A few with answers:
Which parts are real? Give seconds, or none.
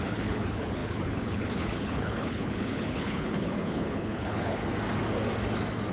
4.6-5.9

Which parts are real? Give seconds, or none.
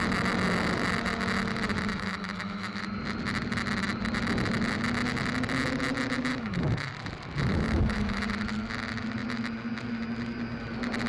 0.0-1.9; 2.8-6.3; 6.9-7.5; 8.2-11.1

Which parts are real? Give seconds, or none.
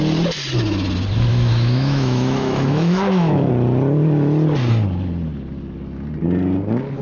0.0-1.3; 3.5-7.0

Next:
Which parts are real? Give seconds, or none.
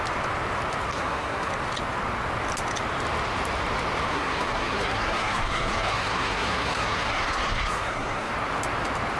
0.0-0.9; 1.5-4.1; 8.3-9.2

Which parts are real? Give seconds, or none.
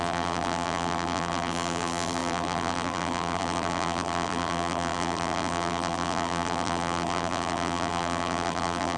none